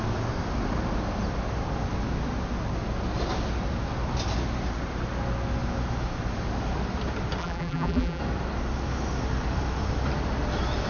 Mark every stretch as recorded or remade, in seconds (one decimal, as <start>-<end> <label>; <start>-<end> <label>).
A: 0.0-7.4 recorded; 7.4-8.2 remade; 8.2-10.9 recorded